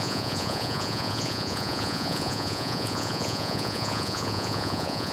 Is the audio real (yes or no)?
no